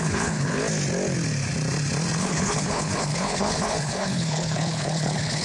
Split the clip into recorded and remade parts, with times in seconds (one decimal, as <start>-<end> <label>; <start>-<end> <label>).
0.0-0.6 remade; 0.6-2.2 recorded; 2.2-5.4 remade